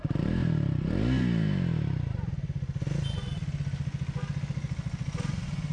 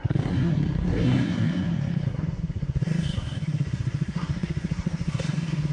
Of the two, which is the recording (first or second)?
first